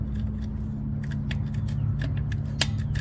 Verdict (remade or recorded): recorded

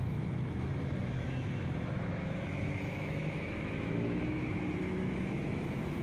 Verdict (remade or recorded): remade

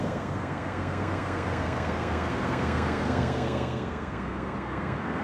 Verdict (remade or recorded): remade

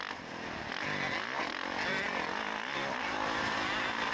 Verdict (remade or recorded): recorded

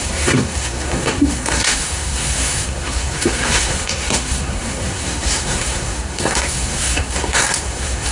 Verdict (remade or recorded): remade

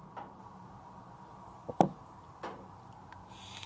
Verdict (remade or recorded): recorded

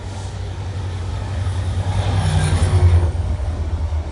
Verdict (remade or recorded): remade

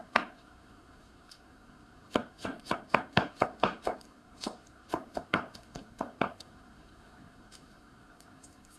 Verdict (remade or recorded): remade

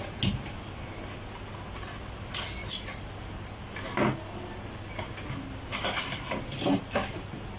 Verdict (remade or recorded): recorded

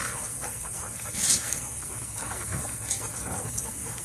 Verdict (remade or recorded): remade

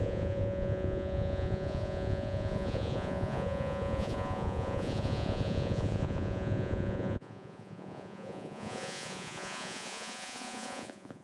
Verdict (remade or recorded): remade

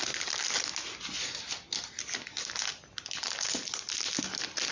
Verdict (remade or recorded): recorded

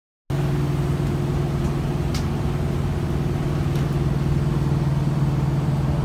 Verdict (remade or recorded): recorded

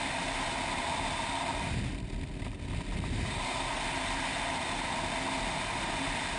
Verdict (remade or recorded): recorded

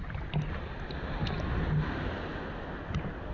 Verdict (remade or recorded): recorded